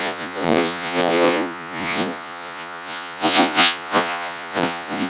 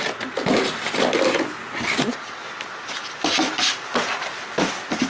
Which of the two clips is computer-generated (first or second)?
first